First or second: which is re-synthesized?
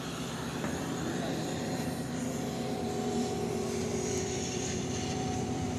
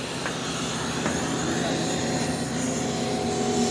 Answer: first